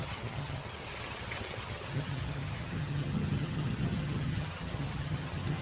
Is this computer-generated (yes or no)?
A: yes